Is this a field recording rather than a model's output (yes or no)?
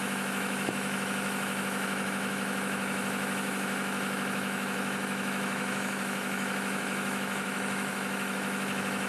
no